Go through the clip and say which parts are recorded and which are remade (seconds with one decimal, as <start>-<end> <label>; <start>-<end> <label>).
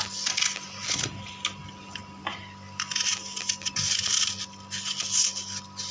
0.0-5.9 recorded